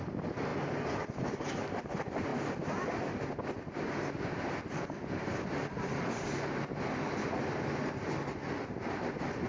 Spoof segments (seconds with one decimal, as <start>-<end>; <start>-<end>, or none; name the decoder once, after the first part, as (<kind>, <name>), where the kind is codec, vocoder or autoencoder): none